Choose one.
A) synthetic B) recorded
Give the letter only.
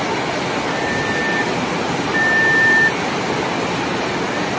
B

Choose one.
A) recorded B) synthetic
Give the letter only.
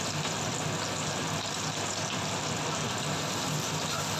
A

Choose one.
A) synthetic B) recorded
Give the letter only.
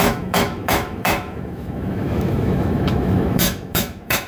A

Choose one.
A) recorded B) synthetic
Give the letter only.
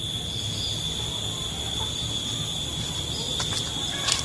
A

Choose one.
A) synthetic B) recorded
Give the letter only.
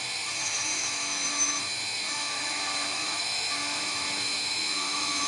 A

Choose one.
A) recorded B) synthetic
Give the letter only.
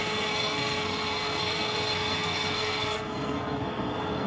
B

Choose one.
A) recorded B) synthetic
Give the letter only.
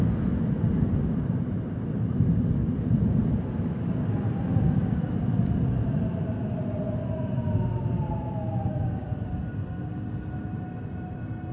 A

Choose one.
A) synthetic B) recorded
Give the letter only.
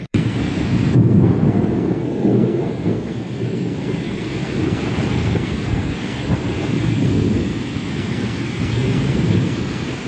A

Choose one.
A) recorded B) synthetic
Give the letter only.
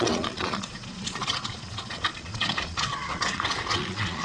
B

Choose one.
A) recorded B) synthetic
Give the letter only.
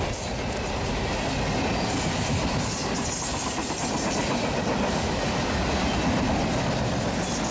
A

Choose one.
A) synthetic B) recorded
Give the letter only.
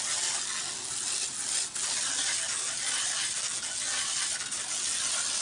B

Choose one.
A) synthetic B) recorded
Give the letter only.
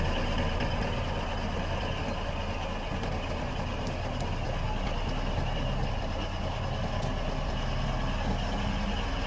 B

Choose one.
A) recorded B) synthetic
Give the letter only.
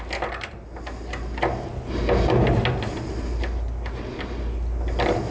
A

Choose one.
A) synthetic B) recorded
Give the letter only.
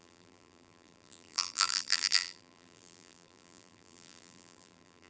A